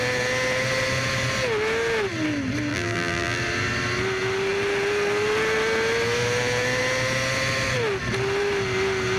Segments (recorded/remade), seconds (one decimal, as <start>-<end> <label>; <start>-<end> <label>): 0.0-2.7 recorded; 2.7-3.4 remade; 3.4-9.2 recorded